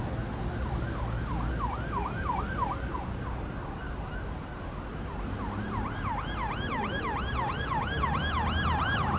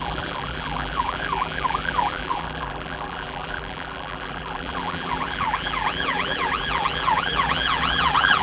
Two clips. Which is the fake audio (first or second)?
second